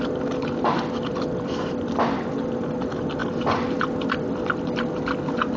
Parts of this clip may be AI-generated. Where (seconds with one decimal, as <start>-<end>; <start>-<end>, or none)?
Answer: 1.1-1.8